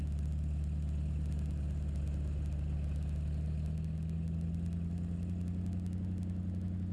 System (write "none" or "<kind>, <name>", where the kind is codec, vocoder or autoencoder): none